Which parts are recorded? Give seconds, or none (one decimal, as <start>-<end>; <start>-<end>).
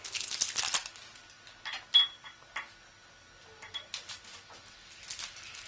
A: 0.0-5.7